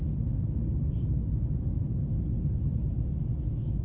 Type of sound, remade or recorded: recorded